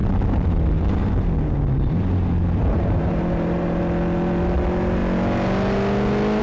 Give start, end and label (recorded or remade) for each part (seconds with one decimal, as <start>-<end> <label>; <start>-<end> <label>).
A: 0.0-3.8 remade; 3.8-6.4 recorded